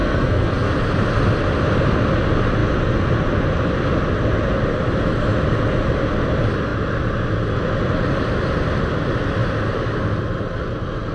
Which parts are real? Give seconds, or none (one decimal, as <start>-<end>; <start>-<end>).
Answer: 0.7-11.1